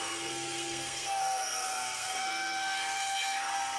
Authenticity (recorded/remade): remade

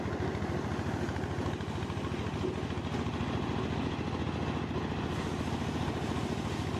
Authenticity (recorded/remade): recorded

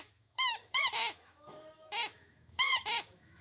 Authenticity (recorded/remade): remade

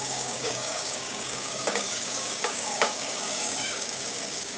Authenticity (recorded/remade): remade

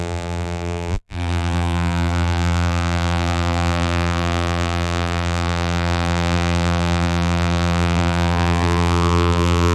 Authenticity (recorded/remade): remade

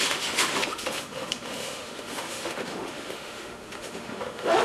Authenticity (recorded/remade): remade